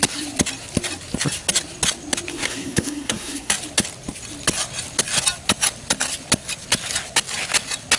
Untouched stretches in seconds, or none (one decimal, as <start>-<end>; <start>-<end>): 0.0-2.3; 3.5-8.0